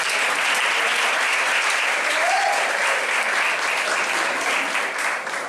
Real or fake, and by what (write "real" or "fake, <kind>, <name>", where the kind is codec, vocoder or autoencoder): real